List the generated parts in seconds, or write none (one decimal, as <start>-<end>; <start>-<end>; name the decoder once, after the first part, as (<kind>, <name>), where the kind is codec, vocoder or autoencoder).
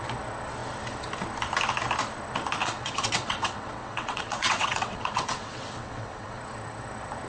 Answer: 2.6-6.4 (vocoder, WaveNeXt)